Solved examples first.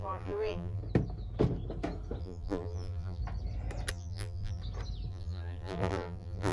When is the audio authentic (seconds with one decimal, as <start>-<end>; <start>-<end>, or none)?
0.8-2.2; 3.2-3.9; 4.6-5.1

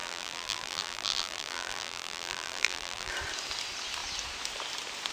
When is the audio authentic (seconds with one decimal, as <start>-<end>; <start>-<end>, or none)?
3.1-5.1

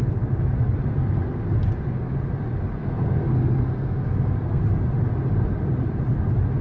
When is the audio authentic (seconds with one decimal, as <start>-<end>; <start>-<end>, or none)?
0.0-0.9; 1.4-2.8; 4.6-6.6